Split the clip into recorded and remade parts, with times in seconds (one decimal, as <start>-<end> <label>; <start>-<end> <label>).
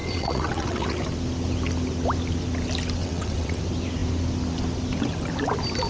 0.0-1.0 remade; 1.0-3.0 recorded; 3.0-3.6 remade; 3.6-5.9 recorded